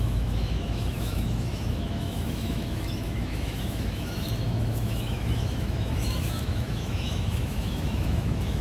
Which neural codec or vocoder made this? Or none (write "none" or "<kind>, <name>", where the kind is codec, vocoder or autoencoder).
autoencoder, DAC-VAE